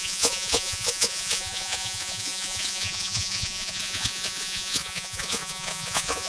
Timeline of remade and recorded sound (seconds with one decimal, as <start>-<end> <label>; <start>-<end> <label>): 0.0-6.3 remade